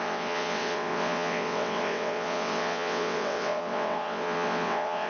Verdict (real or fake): fake